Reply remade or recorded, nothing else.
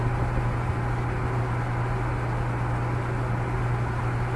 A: recorded